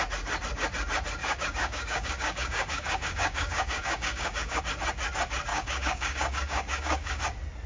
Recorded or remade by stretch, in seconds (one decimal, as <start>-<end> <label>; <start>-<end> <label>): 0.0-1.2 recorded; 1.2-4.6 remade; 4.6-5.5 recorded; 5.5-7.2 remade; 7.2-7.7 recorded